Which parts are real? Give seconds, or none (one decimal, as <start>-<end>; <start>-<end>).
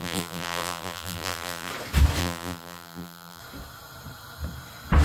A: 1.7-2.2; 3.4-5.0